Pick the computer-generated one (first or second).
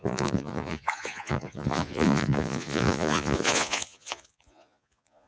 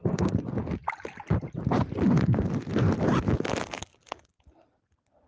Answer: first